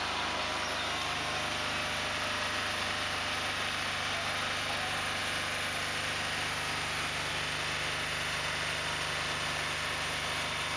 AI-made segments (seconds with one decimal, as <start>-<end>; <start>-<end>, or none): none